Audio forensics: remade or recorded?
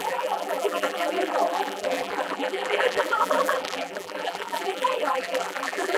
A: remade